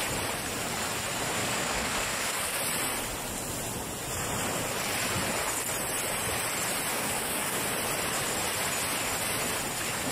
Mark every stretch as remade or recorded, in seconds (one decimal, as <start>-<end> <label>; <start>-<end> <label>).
0.0-1.4 recorded; 1.4-2.6 remade; 2.6-6.9 recorded; 6.9-7.6 remade; 7.6-10.1 recorded